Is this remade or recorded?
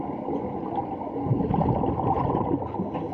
recorded